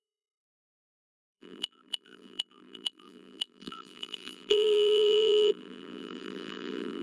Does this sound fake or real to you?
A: fake